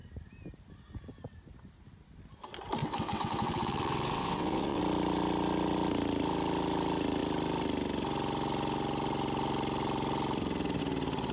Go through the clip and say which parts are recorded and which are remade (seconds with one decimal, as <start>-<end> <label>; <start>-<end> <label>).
0.0-2.8 recorded; 2.8-4.8 remade; 4.8-11.3 recorded